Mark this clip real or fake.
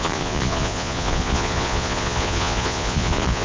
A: fake